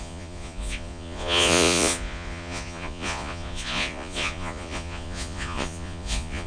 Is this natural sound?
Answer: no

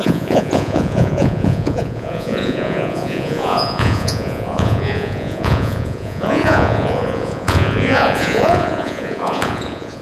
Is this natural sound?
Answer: no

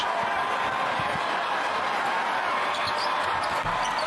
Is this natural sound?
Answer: yes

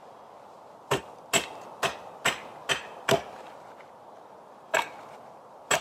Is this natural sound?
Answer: yes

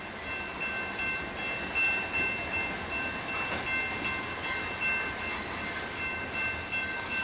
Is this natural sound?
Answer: yes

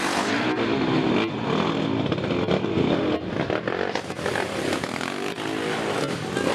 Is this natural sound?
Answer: yes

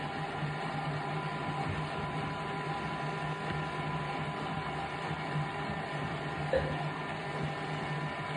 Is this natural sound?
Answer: yes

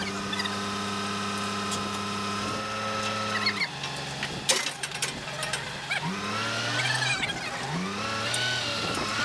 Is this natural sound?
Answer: yes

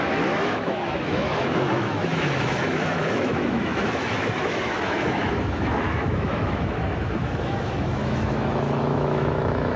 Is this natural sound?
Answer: no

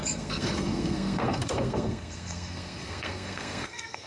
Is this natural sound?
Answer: no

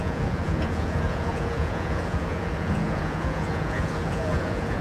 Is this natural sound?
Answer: no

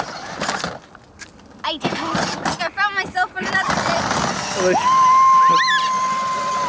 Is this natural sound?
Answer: yes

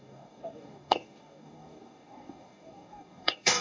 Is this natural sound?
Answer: no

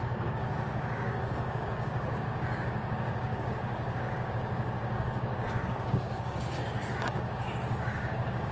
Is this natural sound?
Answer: no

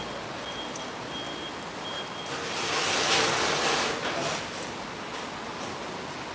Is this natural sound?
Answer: yes